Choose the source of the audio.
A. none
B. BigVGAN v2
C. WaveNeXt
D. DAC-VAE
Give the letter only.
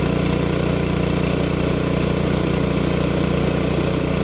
A